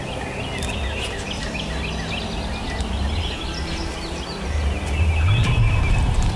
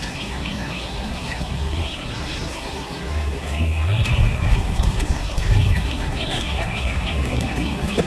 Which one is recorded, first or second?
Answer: first